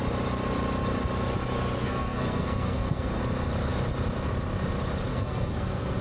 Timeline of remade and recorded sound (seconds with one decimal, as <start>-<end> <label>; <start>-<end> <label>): 0.0-1.8 recorded; 1.8-3.2 remade; 3.2-5.1 recorded; 5.1-6.0 remade